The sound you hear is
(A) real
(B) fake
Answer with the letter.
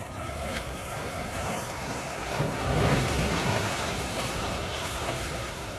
B